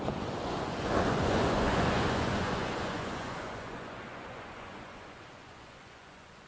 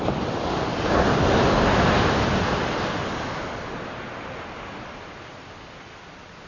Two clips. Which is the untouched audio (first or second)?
second